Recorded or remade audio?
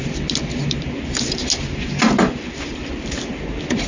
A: recorded